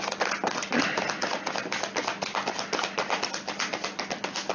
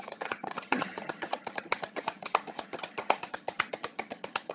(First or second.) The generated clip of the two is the second